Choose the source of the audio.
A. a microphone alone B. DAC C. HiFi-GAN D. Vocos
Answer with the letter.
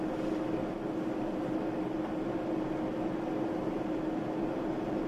A